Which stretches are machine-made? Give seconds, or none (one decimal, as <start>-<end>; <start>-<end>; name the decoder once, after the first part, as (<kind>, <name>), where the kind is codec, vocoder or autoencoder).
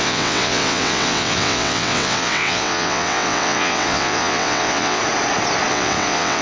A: 0.0-5.0 (vocoder, WaveNeXt); 5.7-6.4